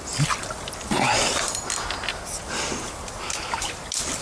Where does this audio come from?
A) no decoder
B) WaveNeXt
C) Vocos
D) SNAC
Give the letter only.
A